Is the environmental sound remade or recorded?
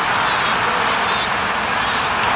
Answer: recorded